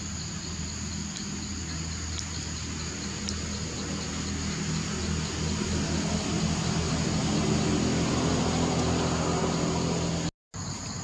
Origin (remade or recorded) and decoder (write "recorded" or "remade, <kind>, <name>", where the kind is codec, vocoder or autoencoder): recorded